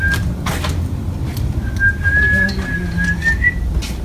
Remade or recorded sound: recorded